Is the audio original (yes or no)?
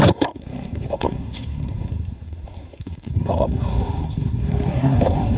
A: no